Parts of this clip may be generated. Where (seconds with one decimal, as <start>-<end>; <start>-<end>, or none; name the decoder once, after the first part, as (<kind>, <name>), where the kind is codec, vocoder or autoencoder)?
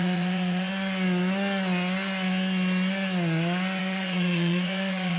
0.0-0.7 (vocoder, Vocos); 3.8-5.2